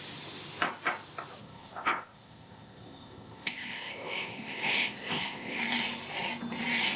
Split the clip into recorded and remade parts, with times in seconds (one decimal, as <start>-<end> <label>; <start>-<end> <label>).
0.0-1.4 recorded; 1.4-5.6 remade; 5.6-7.0 recorded